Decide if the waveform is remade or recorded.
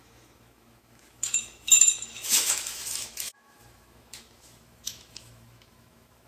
remade